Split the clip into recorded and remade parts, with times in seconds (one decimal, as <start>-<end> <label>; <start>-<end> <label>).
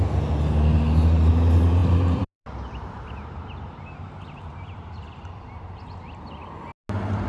0.0-1.8 recorded; 1.8-6.2 remade; 6.2-7.3 recorded